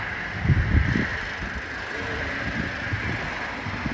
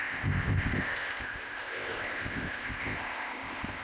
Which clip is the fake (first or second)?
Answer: second